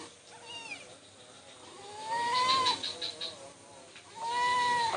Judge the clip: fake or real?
real